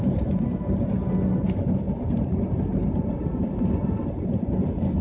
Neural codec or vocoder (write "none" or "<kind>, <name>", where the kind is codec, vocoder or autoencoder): none